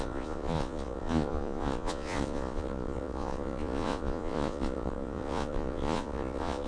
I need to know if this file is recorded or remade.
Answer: remade